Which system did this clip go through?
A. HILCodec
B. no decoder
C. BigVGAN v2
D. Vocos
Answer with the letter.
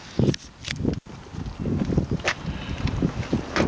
B